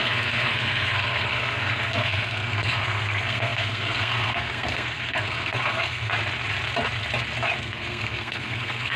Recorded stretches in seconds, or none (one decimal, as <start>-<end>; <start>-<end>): 6.1-7.6